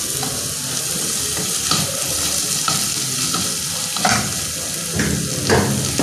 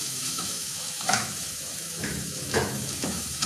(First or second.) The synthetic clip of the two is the second